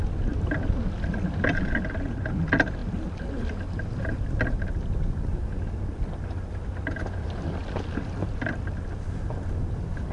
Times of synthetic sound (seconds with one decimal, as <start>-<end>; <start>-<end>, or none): none

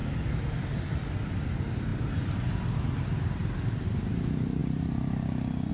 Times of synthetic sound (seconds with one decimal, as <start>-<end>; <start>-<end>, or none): 0.0-1.1; 4.6-5.7

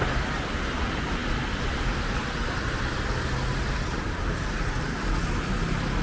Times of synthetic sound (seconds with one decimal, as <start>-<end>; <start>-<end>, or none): none

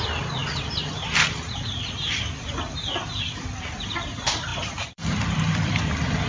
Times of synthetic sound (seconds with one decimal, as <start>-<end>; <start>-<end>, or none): 0.0-6.3